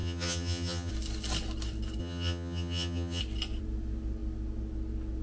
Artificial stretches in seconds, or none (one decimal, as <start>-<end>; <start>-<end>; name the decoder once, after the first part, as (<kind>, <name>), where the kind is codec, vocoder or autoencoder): 0.0-0.9 (vocoder, HiFi-GAN); 2.0-3.2